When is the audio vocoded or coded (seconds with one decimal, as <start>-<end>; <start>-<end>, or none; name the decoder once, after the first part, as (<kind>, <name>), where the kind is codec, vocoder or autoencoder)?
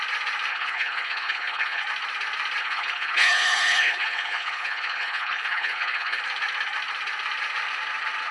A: 0.5-1.8 (codec, HILCodec); 2.6-6.2